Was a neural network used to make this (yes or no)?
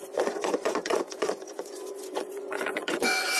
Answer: yes